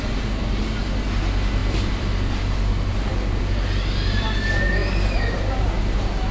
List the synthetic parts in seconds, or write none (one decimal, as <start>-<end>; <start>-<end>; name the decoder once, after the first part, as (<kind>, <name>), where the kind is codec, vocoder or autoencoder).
1.6-3.4 (vocoder, BigVGAN v2)